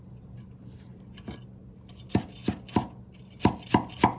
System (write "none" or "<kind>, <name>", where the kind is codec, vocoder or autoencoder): none